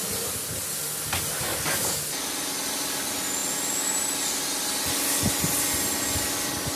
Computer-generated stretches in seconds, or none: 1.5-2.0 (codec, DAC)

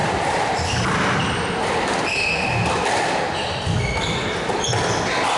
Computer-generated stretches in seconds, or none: none